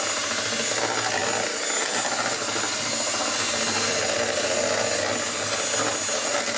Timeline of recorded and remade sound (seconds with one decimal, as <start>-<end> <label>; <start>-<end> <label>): 0.0-6.6 recorded